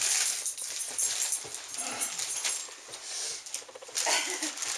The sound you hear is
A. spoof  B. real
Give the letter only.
B